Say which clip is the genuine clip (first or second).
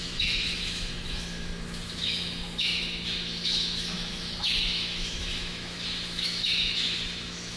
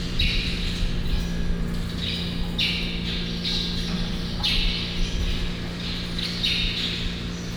second